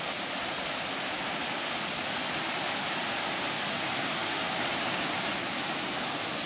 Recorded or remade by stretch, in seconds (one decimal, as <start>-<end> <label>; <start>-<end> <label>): 0.0-6.5 recorded